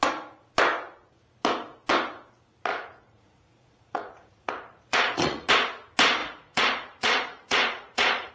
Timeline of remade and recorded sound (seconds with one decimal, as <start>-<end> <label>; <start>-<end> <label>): 0.0-2.7 recorded; 2.7-5.5 remade; 5.5-6.2 recorded; 6.2-8.3 remade

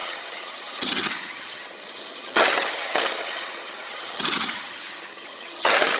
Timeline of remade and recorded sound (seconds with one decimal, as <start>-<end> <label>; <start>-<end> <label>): 0.0-6.0 remade

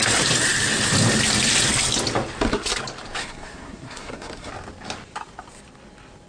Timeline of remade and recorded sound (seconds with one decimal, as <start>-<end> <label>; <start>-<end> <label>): 0.0-3.2 recorded; 3.2-4.5 remade; 4.5-6.3 recorded

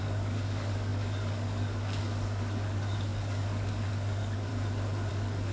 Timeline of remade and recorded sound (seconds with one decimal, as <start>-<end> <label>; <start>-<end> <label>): 0.0-4.5 remade; 4.5-5.1 recorded; 5.1-5.5 remade